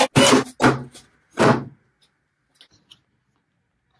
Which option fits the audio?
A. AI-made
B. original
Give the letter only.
B